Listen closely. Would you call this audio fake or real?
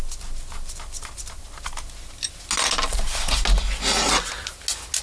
real